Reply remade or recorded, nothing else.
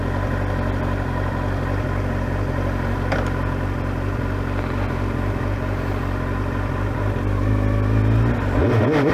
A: recorded